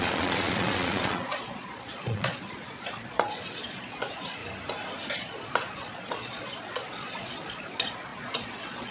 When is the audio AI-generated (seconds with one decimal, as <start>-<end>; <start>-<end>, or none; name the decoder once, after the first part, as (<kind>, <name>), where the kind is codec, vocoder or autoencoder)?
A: 0.0-4.4 (vocoder, Vocos); 5.1-8.9